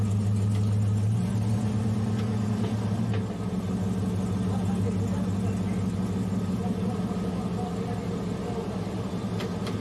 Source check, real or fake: real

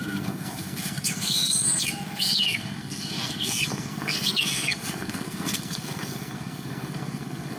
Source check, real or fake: fake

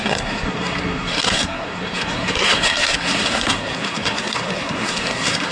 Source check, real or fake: fake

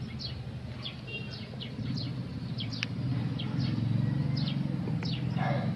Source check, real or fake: real